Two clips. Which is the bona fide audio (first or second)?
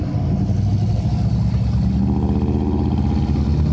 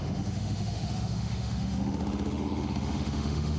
first